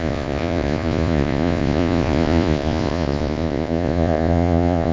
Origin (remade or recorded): remade